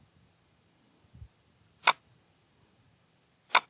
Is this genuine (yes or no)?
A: yes